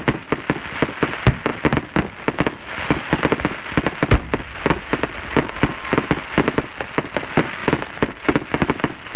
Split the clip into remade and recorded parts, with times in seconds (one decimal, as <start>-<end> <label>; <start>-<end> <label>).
0.0-9.2 recorded